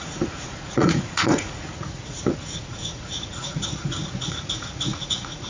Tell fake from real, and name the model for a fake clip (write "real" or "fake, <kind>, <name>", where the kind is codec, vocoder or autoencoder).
fake, vocoder, Vocos